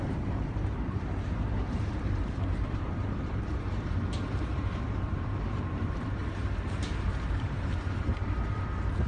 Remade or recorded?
remade